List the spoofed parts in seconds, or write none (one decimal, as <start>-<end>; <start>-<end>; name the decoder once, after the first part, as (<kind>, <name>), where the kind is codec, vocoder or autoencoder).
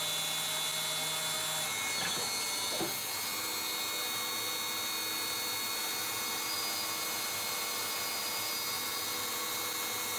none